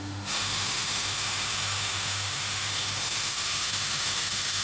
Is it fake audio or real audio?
fake